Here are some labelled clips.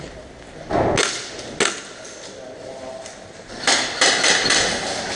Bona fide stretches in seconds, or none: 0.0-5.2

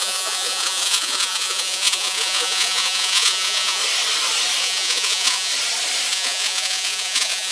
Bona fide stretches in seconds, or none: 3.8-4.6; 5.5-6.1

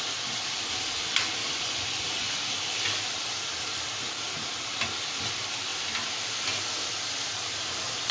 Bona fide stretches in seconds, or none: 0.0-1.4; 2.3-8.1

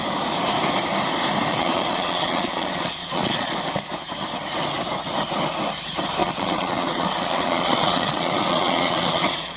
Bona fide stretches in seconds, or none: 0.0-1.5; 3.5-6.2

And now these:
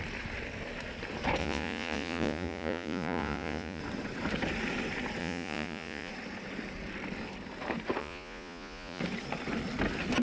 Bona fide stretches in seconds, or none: 0.0-1.4; 3.8-5.2; 6.1-8.0; 9.0-10.2

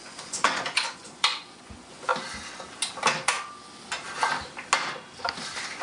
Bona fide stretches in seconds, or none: 2.1-5.8